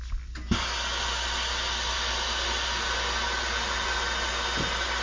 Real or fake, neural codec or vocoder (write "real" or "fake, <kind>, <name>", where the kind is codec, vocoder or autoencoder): real